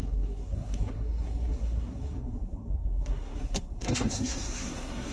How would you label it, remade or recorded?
remade